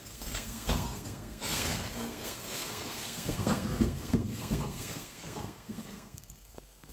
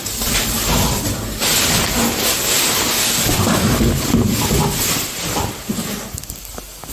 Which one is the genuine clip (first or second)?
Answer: second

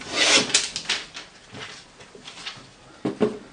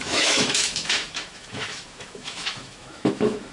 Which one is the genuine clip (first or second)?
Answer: first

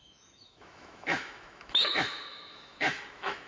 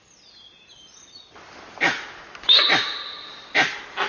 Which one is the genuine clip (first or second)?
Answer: second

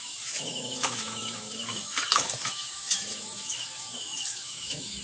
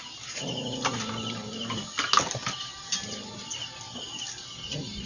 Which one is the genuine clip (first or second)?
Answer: second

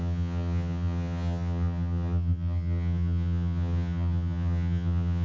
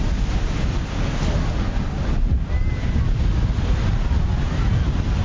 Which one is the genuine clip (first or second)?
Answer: second